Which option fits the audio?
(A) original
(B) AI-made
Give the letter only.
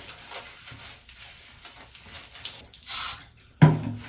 A